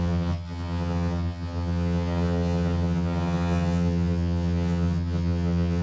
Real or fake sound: fake